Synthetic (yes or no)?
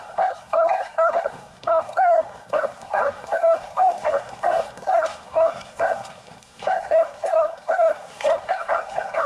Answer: yes